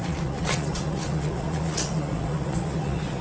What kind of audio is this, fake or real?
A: fake